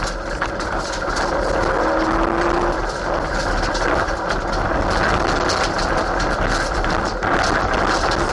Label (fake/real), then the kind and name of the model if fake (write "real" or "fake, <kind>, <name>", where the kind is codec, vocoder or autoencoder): real